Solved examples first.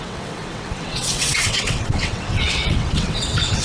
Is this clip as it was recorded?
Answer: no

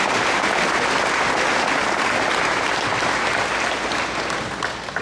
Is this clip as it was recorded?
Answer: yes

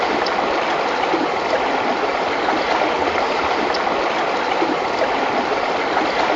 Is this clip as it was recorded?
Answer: yes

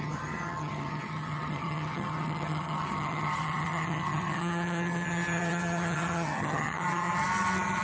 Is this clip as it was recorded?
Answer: no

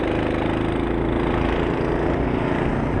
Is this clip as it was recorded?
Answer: yes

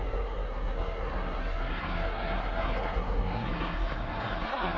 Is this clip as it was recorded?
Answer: no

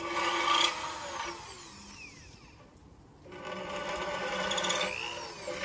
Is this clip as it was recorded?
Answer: yes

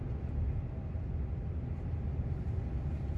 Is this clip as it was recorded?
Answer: yes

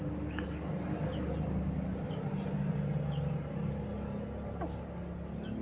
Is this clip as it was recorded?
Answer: yes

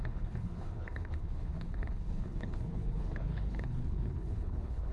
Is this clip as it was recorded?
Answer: no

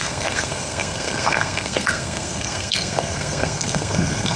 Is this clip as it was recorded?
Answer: no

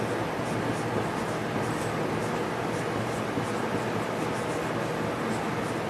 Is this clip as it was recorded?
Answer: yes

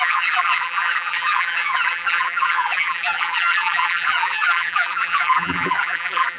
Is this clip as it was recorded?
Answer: no